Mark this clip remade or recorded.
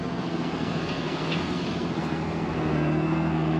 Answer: remade